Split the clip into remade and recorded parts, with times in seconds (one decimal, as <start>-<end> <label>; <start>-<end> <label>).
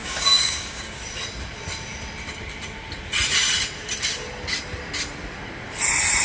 0.0-1.0 remade; 1.0-6.2 recorded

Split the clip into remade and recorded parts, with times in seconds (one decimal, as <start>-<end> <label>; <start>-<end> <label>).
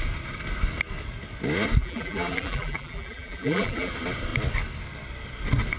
0.0-1.8 recorded; 1.8-3.9 remade; 3.9-5.8 recorded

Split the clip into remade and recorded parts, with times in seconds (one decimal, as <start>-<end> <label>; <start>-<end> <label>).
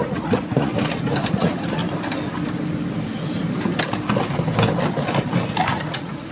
0.0-0.7 remade; 0.7-1.3 recorded; 1.3-1.8 remade; 1.8-5.6 recorded; 5.6-6.3 remade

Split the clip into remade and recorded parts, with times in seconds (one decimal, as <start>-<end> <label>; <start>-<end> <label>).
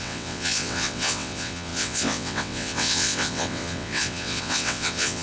0.0-5.2 remade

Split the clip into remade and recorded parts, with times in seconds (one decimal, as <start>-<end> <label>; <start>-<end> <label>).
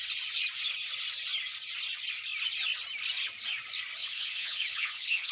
0.0-4.0 recorded; 4.0-5.3 remade